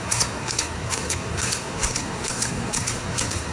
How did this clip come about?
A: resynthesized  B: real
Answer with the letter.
A